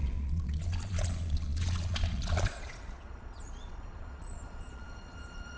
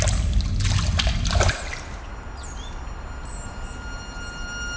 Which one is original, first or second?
second